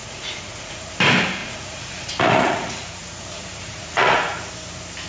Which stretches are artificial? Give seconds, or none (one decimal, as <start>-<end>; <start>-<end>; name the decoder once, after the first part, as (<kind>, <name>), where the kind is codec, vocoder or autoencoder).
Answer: 0.0-0.9 (vocoder, Vocos); 1.4-4.5